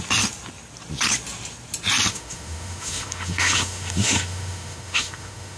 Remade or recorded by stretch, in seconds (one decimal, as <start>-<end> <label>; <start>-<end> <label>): 0.0-2.1 recorded; 2.1-5.6 remade

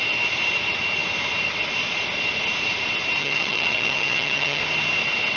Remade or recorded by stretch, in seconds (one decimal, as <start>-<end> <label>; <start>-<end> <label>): 0.0-3.2 recorded; 3.2-4.6 remade; 4.6-5.4 recorded

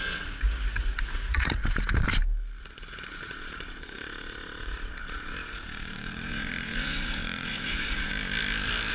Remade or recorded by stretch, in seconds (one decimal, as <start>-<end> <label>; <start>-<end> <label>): 0.0-1.6 remade; 1.6-2.6 recorded; 2.6-8.1 remade; 8.1-8.9 recorded

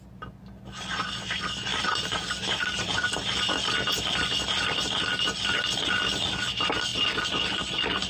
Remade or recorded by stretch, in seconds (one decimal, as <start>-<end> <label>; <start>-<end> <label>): 0.0-1.7 recorded; 1.7-3.1 remade; 3.1-8.1 recorded